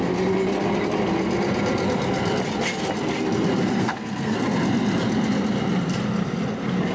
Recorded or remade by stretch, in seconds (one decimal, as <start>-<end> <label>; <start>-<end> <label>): 0.0-3.8 recorded; 3.8-4.4 remade; 4.4-6.9 recorded